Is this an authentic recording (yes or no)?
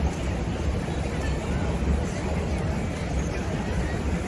yes